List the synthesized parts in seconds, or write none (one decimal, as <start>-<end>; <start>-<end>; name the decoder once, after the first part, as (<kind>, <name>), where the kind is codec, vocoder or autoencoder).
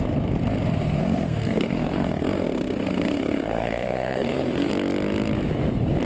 1.0-4.7 (codec, SNAC)